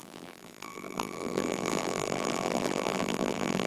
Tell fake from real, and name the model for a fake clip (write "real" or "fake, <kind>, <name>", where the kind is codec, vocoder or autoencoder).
fake, vocoder, BigVGAN v2